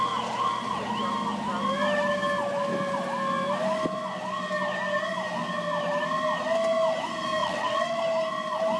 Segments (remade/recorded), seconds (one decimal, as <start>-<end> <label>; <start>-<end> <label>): 0.0-7.4 recorded; 7.4-8.0 remade; 8.0-8.8 recorded